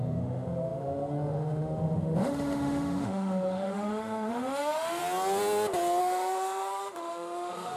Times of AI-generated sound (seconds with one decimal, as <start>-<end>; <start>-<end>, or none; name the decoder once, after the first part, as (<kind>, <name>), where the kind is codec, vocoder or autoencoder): 0.0-5.0 (autoencoder, DAC-VAE); 6.0-7.8